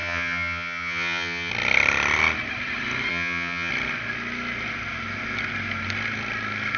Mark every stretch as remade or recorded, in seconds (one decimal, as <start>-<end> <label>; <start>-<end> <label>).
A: 0.0-1.5 remade; 1.5-3.1 recorded; 3.1-3.7 remade; 3.7-6.8 recorded